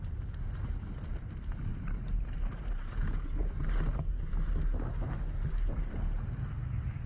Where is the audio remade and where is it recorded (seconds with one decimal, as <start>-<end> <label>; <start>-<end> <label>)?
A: 0.0-1.7 recorded; 1.7-3.2 remade; 3.2-7.1 recorded